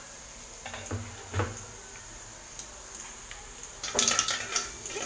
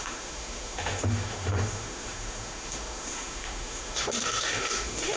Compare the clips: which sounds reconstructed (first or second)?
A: second